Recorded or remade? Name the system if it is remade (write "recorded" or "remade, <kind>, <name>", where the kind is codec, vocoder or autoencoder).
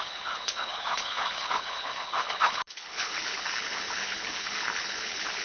remade, codec, HILCodec